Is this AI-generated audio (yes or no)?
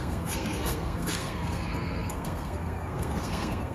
yes